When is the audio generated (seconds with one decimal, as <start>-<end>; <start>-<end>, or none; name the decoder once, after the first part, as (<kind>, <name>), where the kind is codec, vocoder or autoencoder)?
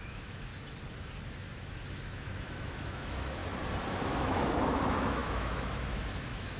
0.0-0.5 (autoencoder, DAC-VAE); 1.3-3.4; 3.9-6.6